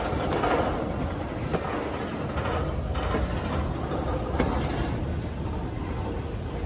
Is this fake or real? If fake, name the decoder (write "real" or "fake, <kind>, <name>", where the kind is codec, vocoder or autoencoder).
real